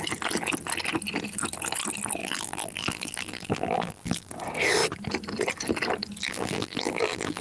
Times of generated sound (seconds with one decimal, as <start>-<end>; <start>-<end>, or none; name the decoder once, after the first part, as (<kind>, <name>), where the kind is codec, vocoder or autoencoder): 2.2-4.3 (vocoder, BigVGAN v2); 6.2-7.4